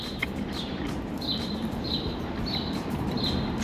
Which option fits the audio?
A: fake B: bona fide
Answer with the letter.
A